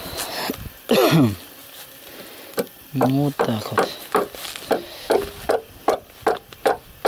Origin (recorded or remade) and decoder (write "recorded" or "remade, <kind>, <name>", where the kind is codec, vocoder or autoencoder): recorded